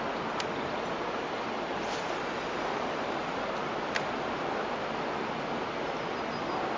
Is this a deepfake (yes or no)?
no